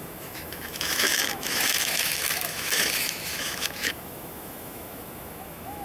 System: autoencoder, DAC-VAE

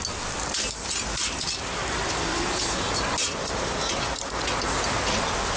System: none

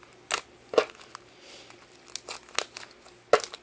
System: none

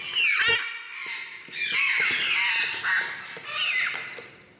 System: none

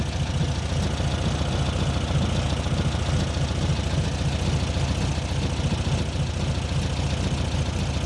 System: none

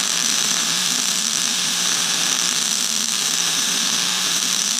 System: autoencoder, DAC-VAE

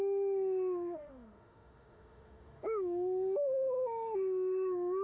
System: autoencoder, DAC-VAE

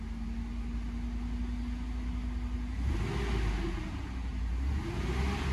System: none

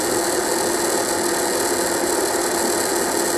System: none